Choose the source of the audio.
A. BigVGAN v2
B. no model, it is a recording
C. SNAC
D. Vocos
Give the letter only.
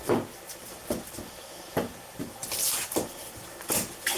B